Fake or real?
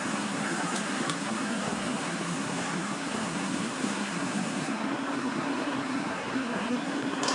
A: fake